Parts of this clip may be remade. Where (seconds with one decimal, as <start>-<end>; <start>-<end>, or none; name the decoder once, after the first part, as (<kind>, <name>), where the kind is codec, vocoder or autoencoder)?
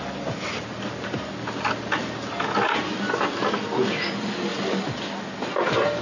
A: none